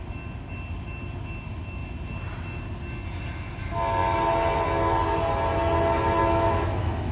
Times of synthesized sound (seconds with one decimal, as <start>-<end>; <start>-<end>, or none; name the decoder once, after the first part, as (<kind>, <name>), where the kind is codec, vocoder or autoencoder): 6.2-7.1 (autoencoder, DAC-VAE)